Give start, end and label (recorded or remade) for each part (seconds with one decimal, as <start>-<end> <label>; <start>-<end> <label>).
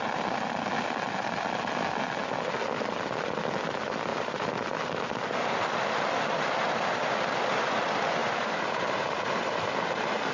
0.0-4.1 recorded; 4.1-4.6 remade; 4.6-8.2 recorded; 8.2-10.3 remade